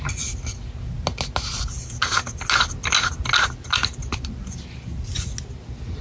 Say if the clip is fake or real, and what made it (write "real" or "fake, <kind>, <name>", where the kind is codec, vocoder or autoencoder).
real